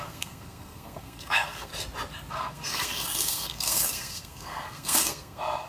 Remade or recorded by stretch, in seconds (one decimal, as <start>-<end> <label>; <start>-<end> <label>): 0.0-1.7 remade; 1.7-2.3 recorded; 2.3-5.7 remade